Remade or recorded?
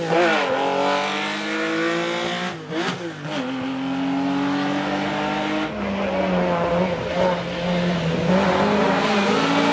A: recorded